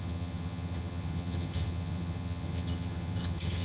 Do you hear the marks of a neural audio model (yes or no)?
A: yes